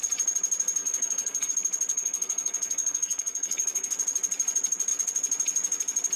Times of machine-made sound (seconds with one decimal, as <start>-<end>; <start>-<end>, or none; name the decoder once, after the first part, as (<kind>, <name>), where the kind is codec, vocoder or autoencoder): 0.8-1.5 (codec, SNAC); 1.9-3.9